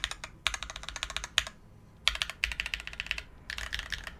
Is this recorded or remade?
recorded